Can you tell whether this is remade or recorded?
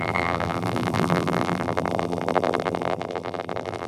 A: remade